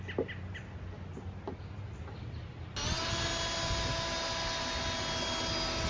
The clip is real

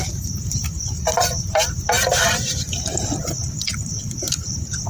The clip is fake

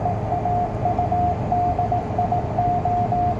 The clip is real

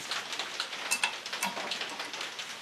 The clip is real